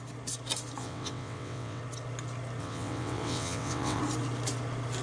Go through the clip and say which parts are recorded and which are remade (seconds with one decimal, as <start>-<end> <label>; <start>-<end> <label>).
0.0-0.8 recorded; 0.8-1.8 remade; 1.8-2.6 recorded; 2.6-4.0 remade; 4.0-5.0 recorded